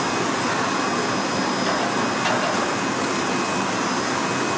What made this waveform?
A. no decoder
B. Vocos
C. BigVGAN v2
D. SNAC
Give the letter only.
A